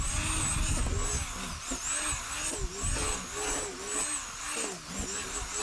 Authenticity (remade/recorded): recorded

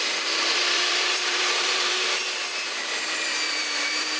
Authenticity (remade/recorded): remade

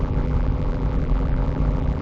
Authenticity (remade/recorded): remade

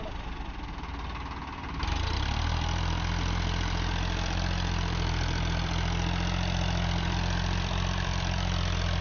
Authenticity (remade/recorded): remade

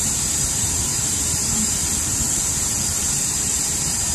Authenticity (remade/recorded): remade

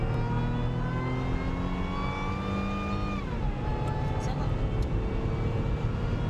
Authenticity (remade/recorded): recorded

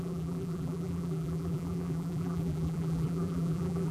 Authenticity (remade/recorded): remade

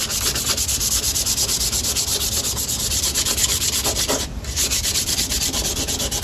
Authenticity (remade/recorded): remade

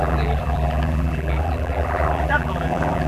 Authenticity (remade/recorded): remade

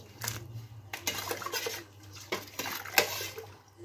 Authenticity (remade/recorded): recorded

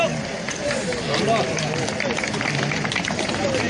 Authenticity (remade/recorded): recorded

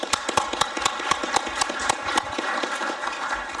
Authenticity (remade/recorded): remade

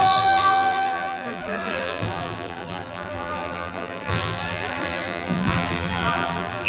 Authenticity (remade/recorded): remade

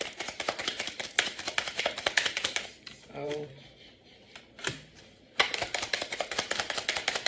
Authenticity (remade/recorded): remade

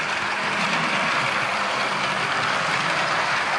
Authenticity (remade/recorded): remade